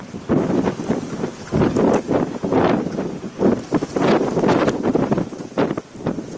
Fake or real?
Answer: real